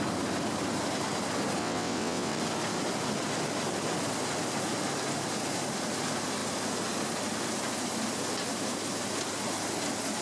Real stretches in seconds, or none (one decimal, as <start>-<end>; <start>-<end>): 0.0-1.6; 2.4-10.2